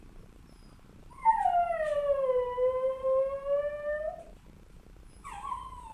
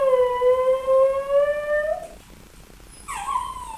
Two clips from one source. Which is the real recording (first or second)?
second